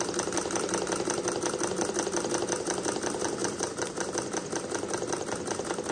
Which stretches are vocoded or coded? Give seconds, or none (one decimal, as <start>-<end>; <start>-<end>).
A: 3.4-4.1